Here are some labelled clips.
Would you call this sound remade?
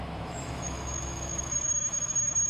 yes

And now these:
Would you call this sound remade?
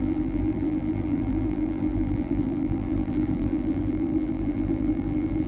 yes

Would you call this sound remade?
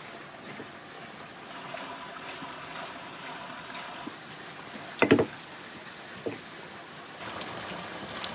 no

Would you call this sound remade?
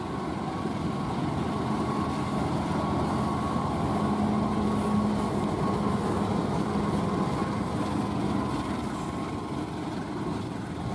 no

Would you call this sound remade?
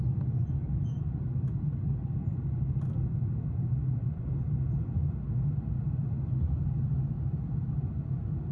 no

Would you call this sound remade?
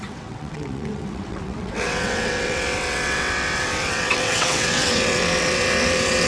yes